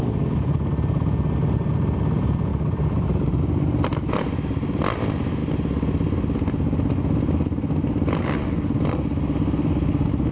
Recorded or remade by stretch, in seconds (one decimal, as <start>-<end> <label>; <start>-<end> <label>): 0.0-2.5 recorded; 2.5-3.4 remade; 3.4-10.3 recorded